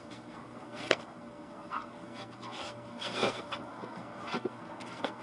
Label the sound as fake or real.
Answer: fake